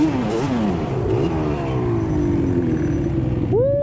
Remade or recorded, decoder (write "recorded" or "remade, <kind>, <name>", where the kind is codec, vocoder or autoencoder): recorded